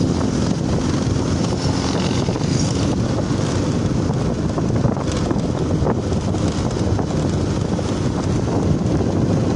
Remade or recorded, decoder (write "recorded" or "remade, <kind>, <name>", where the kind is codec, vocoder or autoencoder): recorded